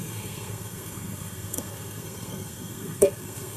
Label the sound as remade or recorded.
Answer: remade